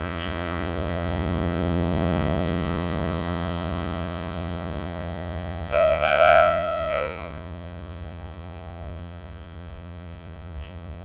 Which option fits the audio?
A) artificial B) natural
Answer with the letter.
A